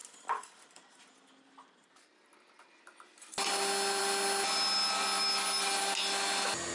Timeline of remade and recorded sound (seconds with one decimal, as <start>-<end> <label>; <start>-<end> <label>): 0.0-6.7 recorded